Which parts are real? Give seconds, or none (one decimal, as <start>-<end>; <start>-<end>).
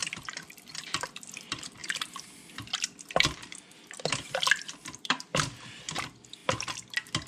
5.3-5.8; 6.4-7.3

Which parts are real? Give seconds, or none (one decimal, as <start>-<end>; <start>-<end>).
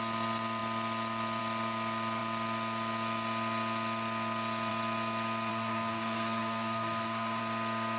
0.0-5.5; 7.4-8.0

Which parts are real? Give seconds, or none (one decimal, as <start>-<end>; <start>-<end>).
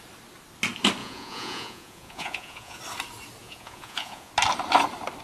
0.0-1.0; 2.8-3.4; 4.3-5.2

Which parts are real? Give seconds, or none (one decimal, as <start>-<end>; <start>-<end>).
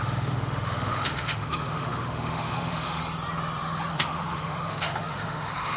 3.0-3.9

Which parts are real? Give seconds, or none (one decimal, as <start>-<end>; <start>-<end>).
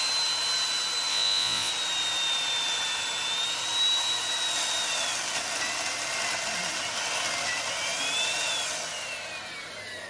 0.0-1.1; 1.7-10.1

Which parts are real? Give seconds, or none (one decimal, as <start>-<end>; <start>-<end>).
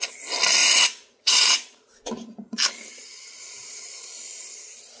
0.0-0.6; 2.1-5.0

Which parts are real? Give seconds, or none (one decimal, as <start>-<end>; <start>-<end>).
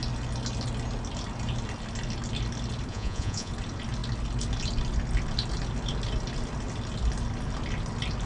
0.0-2.9; 3.5-8.3